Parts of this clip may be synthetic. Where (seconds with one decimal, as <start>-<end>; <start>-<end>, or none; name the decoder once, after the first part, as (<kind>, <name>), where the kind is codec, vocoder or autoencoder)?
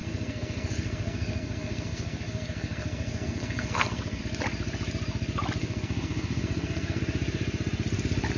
0.0-4.2 (codec, SNAC); 5.6-7.0